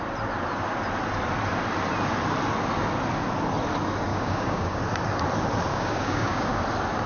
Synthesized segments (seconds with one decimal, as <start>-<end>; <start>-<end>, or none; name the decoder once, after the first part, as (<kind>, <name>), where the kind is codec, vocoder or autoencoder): 4.1-4.8 (codec, DAC); 5.7-6.6